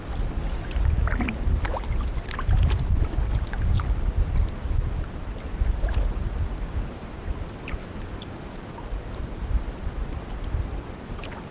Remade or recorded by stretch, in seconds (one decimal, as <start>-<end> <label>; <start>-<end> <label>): 0.0-11.5 recorded